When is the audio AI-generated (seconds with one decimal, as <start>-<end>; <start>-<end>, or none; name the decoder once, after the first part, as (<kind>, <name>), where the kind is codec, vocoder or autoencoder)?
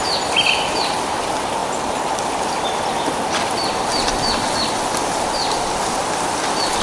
none